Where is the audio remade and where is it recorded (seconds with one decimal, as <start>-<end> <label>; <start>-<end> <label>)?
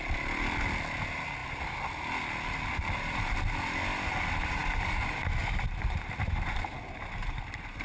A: 0.0-7.8 recorded